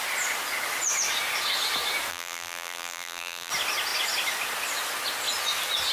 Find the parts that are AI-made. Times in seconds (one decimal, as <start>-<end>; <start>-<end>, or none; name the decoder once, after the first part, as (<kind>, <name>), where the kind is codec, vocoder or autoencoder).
2.1-3.5 (vocoder, BigVGAN v2)